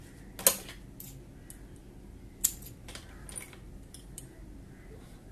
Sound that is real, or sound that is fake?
real